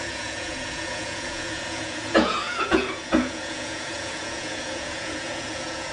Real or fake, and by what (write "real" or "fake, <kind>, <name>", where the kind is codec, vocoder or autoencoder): fake, vocoder, Vocos